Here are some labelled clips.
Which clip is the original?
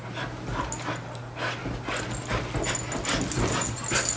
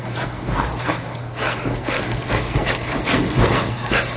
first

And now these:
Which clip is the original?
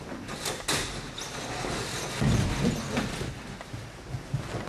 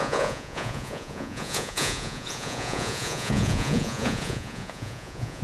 first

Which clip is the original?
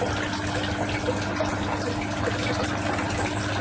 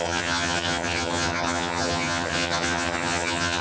first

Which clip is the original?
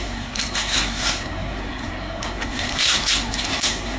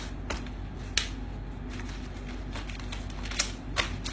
second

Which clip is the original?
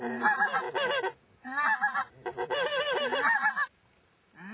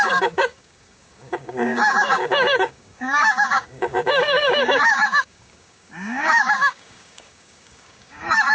first